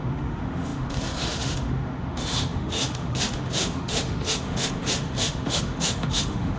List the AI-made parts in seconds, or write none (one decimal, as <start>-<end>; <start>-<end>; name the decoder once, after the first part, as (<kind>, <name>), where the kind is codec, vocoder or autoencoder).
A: 0.0-6.6 (autoencoder, DAC-VAE)